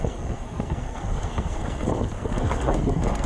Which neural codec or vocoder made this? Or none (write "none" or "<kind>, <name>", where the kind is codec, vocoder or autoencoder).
codec, SNAC